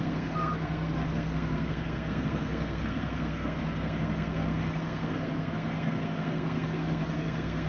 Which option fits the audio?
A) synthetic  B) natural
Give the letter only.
A